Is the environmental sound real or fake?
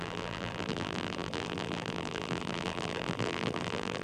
fake